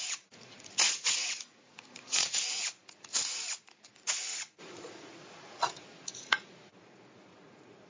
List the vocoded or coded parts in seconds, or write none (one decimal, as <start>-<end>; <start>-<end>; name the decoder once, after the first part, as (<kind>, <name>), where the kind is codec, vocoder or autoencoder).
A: 0.0-7.9 (vocoder, Vocos)